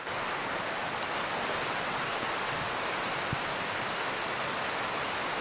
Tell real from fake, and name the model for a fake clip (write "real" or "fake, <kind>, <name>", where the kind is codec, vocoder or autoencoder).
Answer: real